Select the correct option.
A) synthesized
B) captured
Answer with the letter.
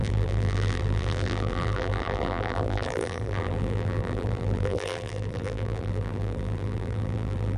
A